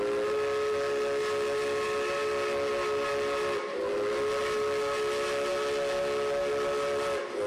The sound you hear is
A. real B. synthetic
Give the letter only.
A